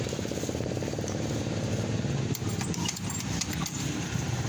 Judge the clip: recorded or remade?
remade